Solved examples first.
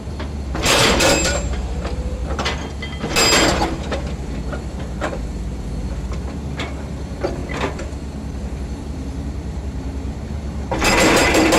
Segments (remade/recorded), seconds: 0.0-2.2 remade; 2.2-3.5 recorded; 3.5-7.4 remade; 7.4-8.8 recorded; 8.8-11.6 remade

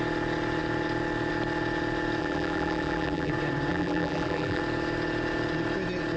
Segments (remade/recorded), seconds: 0.0-2.2 recorded; 2.2-3.3 remade; 3.3-3.7 recorded; 3.7-4.6 remade; 4.6-6.2 recorded

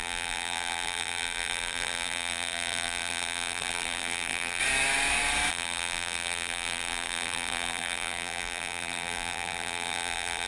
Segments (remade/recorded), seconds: 0.0-4.6 remade; 4.6-5.5 recorded; 5.5-10.5 remade

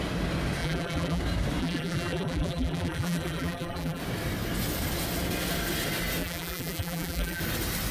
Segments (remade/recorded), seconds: 0.0-0.6 recorded; 0.6-1.2 remade; 1.2-1.6 recorded; 1.6-4.0 remade; 4.0-6.2 recorded; 6.2-7.4 remade; 7.4-7.9 recorded

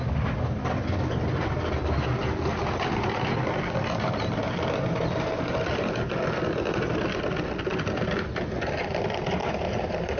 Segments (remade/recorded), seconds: 0.0-4.4 recorded; 4.4-5.4 remade; 5.4-9.4 recorded; 9.4-10.2 remade

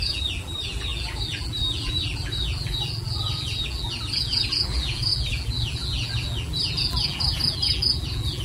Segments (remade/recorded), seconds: 0.0-8.4 remade